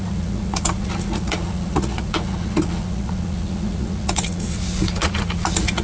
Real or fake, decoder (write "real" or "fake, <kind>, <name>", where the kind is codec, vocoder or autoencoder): fake, vocoder, Vocos